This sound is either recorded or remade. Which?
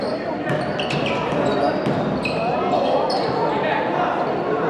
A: recorded